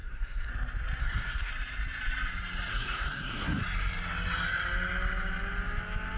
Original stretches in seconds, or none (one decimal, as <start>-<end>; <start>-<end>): 0.5-1.0; 1.5-2.7; 3.6-6.2